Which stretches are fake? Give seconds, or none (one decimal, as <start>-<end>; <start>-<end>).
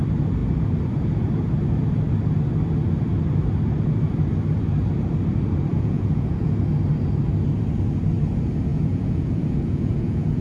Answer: 5.7-6.5; 8.7-10.4